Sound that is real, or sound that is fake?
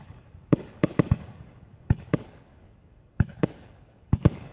fake